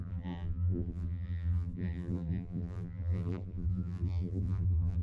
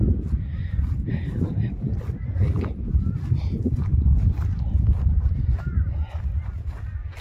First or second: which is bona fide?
second